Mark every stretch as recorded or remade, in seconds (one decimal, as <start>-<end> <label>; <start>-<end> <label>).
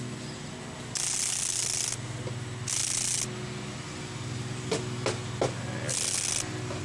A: 0.0-6.8 recorded